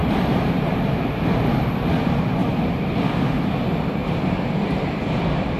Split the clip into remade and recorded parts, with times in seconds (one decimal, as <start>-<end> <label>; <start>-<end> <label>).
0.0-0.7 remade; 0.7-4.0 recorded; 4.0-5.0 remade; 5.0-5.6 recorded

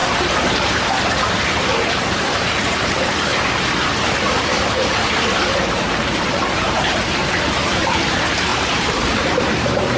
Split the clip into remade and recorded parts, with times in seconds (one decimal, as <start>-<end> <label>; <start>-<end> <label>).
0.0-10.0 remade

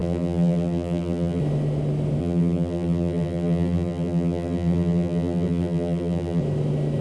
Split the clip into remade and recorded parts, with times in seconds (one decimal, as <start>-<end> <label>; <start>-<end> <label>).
0.0-1.4 remade; 1.4-2.2 recorded; 2.2-6.4 remade; 6.4-7.0 recorded

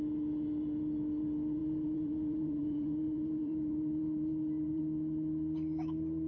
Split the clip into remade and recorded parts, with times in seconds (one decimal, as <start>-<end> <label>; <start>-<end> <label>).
0.0-1.6 recorded; 1.6-4.8 remade; 4.8-6.3 recorded

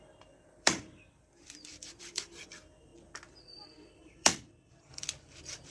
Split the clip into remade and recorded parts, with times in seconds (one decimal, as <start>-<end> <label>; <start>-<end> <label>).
0.0-2.9 remade; 2.9-3.4 recorded; 3.4-5.7 remade

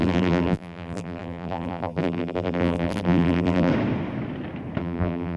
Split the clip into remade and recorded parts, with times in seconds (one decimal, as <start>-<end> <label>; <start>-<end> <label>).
0.0-3.7 remade; 3.7-4.8 recorded; 4.8-5.4 remade

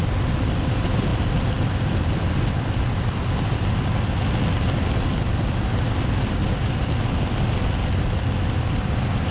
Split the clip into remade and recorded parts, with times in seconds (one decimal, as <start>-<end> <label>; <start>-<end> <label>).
0.0-1.1 recorded; 1.1-3.7 remade; 3.7-5.1 recorded; 5.1-7.5 remade; 7.5-9.3 recorded

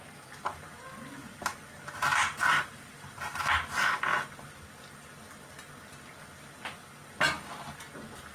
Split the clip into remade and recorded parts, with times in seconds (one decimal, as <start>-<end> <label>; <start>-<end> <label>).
0.0-1.2 recorded; 1.2-3.4 remade; 3.4-8.3 recorded